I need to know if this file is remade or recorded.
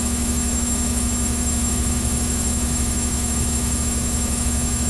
remade